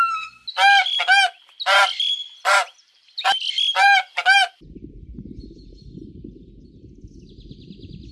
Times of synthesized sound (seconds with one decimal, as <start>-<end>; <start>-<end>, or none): 2.2-4.5